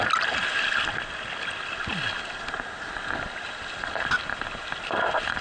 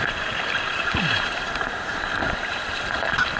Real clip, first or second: first